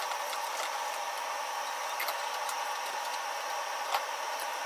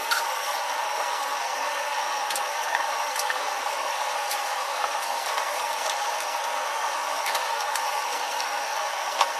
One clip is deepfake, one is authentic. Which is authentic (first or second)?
first